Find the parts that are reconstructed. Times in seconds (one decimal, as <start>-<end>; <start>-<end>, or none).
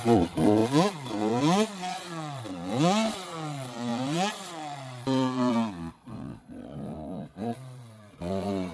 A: 0.0-8.7